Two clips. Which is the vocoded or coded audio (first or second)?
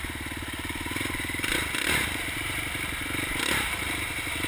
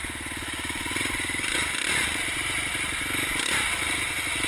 first